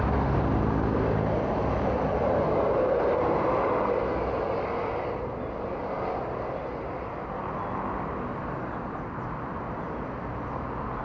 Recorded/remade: recorded